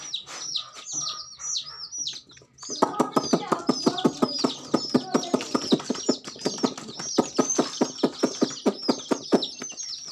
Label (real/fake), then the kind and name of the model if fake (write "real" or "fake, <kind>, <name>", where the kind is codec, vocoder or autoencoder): real